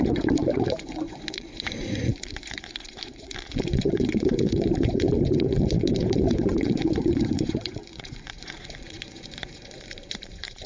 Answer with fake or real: fake